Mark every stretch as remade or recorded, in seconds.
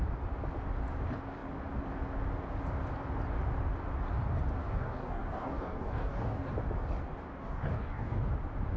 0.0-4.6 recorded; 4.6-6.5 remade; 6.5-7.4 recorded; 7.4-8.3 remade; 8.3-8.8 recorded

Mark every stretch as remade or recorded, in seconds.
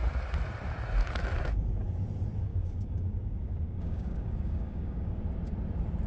0.0-2.5 recorded; 2.5-5.2 remade; 5.2-6.1 recorded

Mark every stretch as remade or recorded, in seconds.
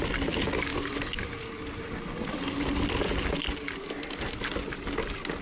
0.0-5.4 recorded